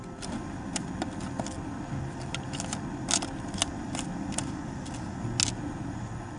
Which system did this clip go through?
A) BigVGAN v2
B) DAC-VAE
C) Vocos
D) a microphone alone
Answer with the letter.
D